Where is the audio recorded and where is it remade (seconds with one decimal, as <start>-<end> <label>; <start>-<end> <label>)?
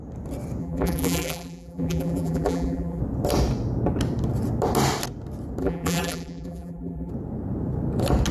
0.0-0.6 recorded; 0.6-3.0 remade; 3.0-5.6 recorded; 5.6-7.1 remade; 7.1-8.3 recorded